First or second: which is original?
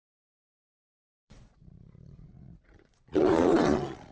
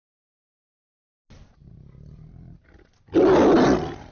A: second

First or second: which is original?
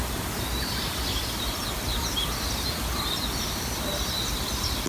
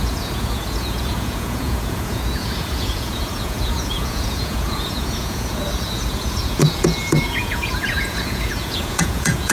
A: first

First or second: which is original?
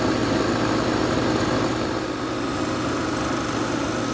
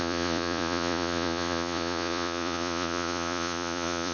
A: first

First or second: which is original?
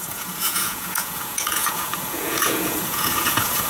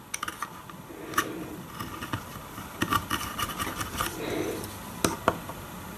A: second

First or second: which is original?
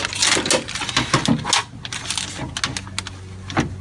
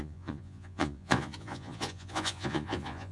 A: first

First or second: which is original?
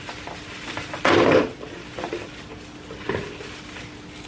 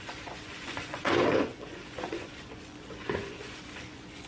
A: first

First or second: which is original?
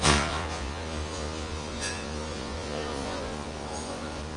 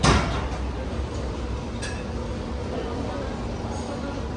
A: second